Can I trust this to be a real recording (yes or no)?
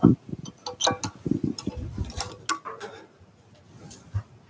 yes